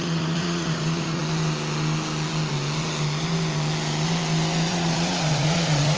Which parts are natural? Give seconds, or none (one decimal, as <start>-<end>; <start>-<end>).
1.2-4.7